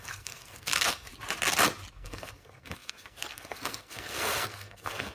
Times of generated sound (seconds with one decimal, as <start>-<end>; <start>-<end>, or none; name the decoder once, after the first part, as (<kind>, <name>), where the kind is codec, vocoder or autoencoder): 0.0-1.1 (codec, SNAC); 1.9-5.1